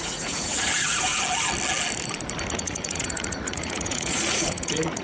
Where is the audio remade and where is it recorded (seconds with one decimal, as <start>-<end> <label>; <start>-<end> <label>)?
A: 0.0-1.1 remade; 1.1-2.5 recorded; 2.5-5.0 remade